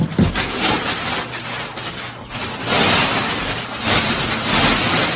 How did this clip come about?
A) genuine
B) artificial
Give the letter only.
A